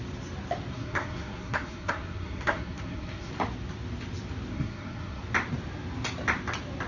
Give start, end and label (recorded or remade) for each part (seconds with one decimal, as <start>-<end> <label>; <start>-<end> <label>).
0.0-0.7 recorded; 0.7-3.3 remade; 3.3-4.5 recorded; 4.5-5.2 remade; 5.2-6.9 recorded